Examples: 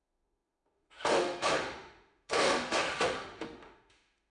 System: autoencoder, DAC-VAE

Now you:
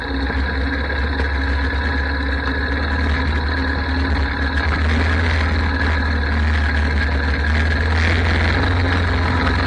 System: none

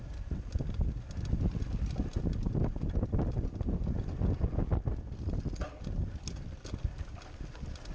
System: none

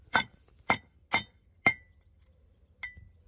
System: none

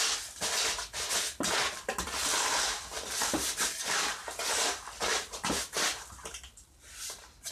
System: none